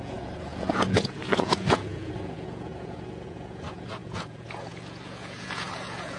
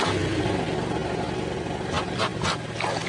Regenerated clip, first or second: first